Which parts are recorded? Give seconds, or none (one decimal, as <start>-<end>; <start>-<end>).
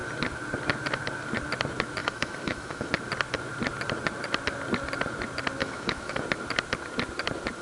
0.0-2.0; 2.9-5.6; 6.2-7.6